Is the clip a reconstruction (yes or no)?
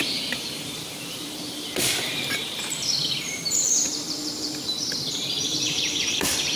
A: yes